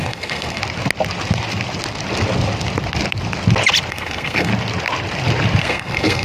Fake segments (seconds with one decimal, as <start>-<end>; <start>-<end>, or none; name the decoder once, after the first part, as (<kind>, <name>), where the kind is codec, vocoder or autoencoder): 0.0-0.6 (codec, SNAC); 3.9-4.5; 5.6-6.2